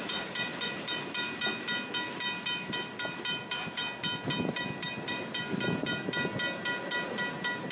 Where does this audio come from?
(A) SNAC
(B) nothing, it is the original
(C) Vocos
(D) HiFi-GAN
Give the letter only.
B